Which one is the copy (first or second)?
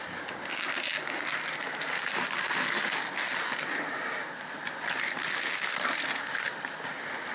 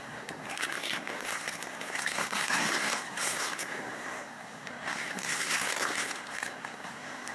second